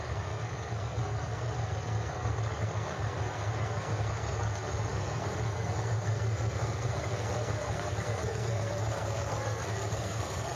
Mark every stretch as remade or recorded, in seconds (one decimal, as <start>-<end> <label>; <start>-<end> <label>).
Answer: 0.0-10.6 remade